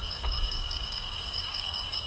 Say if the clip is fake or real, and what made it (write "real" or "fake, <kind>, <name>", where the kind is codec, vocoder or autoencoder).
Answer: fake, codec, DAC